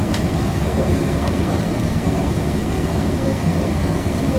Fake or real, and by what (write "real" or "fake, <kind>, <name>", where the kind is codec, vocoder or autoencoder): fake, codec, SNAC